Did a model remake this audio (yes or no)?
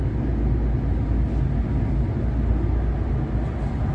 no